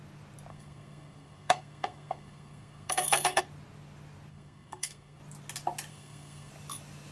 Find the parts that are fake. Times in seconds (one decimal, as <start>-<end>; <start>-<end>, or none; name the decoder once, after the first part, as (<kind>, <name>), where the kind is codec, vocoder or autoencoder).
0.5-3.4 (codec, SNAC); 4.3-5.2; 5.9-6.5